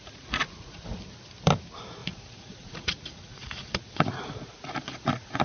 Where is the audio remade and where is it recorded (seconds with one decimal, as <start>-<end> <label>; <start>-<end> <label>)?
0.0-0.8 remade; 0.8-2.0 recorded; 2.0-5.4 remade